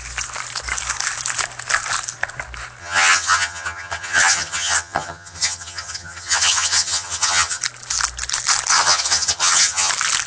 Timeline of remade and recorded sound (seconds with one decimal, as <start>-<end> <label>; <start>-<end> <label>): 0.0-2.8 recorded; 2.8-7.6 remade; 7.6-8.7 recorded; 8.7-9.9 remade; 9.9-10.3 recorded